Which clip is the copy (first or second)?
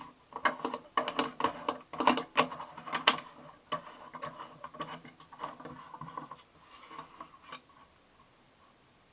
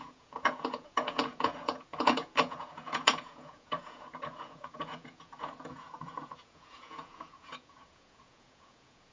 second